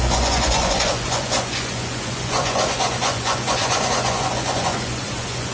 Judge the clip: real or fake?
fake